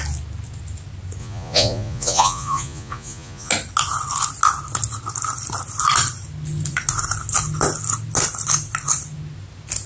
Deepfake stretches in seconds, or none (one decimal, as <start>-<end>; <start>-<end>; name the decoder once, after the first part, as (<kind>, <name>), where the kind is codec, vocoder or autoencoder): 1.2-3.5 (vocoder, Vocos)